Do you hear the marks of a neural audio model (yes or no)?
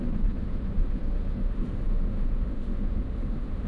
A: yes